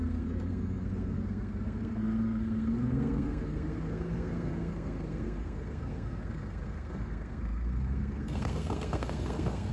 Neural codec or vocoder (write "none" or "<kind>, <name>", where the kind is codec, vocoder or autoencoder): codec, SNAC